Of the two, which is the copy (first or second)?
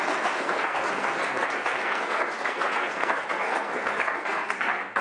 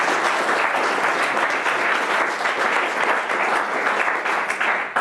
first